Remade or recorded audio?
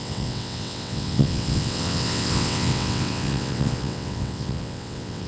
remade